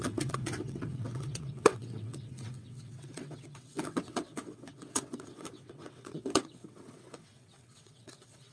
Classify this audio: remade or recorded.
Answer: remade